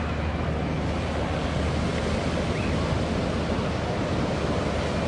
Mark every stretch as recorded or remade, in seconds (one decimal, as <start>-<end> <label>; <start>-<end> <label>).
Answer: 0.0-5.1 recorded